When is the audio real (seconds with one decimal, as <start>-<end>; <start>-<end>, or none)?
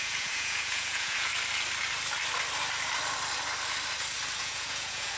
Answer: 1.3-4.4